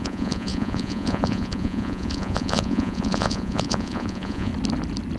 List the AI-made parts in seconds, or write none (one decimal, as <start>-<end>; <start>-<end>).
0.0-4.5